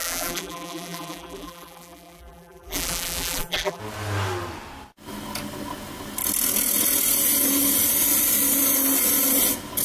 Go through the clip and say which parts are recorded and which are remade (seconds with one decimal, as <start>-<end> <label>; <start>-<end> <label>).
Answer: 0.0-3.8 remade; 3.8-9.8 recorded